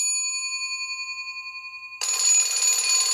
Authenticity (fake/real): real